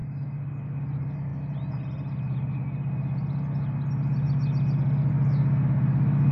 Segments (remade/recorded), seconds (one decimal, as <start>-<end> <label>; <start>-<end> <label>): 0.0-6.3 recorded